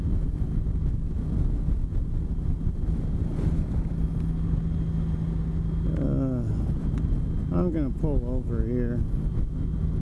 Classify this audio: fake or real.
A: real